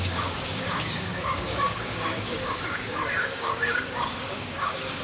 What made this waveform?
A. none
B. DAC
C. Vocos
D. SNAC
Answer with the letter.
B